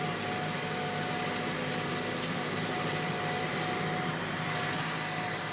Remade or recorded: recorded